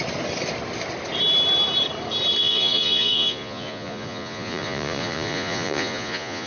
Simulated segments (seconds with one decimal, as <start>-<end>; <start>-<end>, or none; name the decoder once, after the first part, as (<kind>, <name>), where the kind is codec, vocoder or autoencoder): 2.4-6.5 (vocoder, Vocos)